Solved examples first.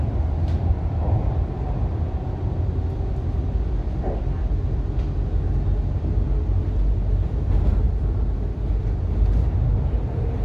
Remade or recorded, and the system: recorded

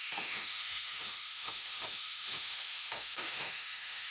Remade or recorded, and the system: remade, autoencoder, DAC-VAE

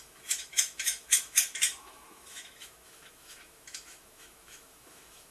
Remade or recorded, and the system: remade, autoencoder, DAC-VAE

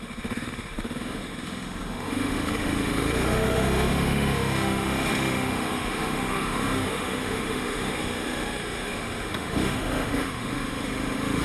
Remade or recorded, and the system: remade, autoencoder, DAC-VAE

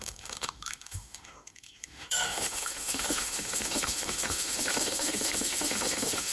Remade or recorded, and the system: remade, autoencoder, DAC-VAE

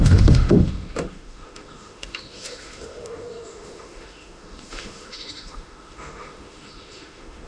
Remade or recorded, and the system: remade, autoencoder, DAC-VAE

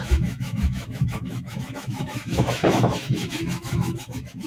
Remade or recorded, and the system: remade, autoencoder, DAC-VAE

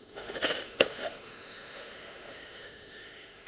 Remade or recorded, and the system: remade, autoencoder, DAC-VAE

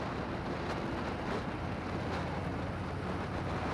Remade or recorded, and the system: recorded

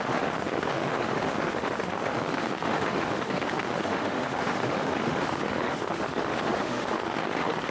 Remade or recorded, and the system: remade, autoencoder, DAC-VAE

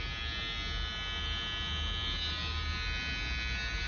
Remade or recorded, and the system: recorded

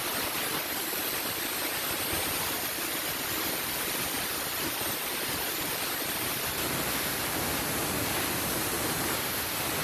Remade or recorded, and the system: recorded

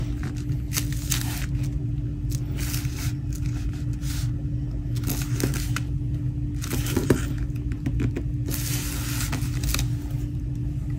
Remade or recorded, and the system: recorded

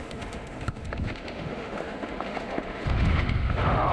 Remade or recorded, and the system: remade, autoencoder, DAC-VAE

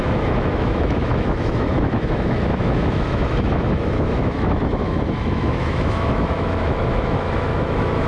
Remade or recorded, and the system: remade, autoencoder, DAC-VAE